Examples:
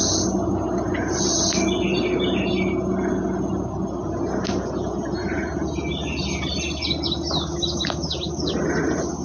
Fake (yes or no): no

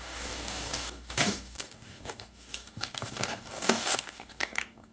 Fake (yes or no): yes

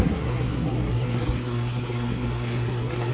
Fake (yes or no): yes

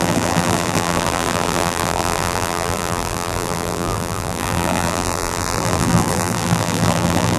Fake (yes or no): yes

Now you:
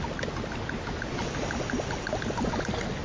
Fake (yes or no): no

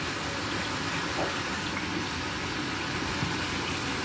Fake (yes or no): no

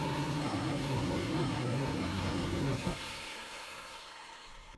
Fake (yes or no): yes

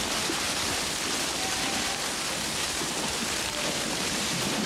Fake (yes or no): no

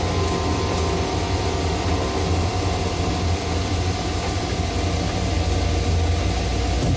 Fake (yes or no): no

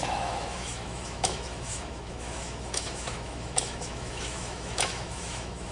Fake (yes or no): yes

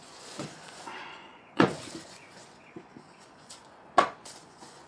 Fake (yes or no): yes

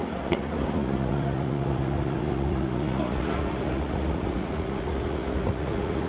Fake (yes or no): yes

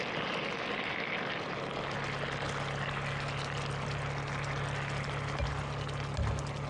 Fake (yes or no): no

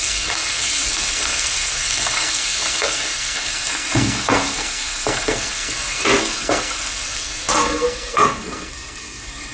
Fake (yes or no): yes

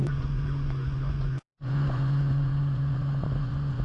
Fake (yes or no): yes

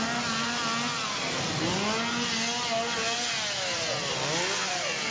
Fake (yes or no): no